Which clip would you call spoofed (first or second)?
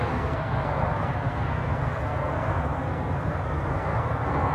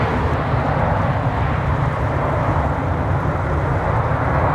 first